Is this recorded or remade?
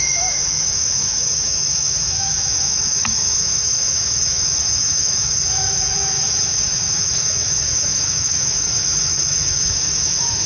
remade